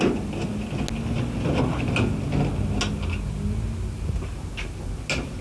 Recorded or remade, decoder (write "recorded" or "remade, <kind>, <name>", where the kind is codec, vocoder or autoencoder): recorded